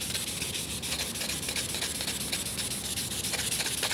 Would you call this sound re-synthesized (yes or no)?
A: no